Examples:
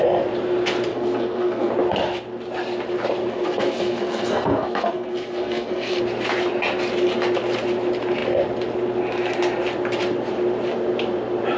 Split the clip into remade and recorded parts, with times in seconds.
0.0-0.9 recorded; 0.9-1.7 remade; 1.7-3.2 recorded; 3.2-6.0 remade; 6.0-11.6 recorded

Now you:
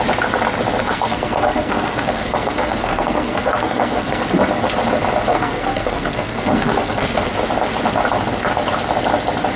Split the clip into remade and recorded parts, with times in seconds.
0.0-0.8 recorded; 0.8-4.2 remade; 4.2-5.3 recorded; 5.3-7.3 remade; 7.3-9.6 recorded

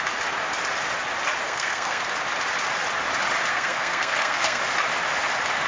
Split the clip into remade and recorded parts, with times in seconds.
0.0-1.4 recorded; 1.4-2.0 remade; 2.0-3.5 recorded; 3.5-4.6 remade; 4.6-5.7 recorded

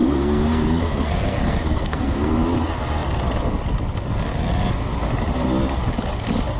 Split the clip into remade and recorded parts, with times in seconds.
0.0-2.3 remade; 2.3-6.6 recorded